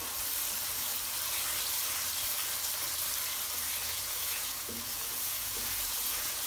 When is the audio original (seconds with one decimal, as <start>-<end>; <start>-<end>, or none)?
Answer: 0.0-3.8